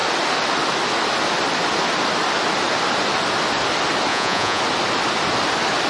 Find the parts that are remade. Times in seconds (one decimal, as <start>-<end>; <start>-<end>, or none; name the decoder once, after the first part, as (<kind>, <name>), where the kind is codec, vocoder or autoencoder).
4.1-4.6 (vocoder, Vocos)